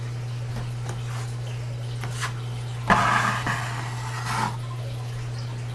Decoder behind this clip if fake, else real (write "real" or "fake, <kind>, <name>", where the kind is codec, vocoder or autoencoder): real